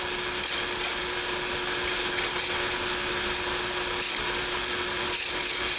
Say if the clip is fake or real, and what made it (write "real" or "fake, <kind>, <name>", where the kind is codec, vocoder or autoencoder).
real